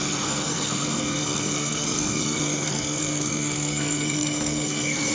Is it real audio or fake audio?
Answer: fake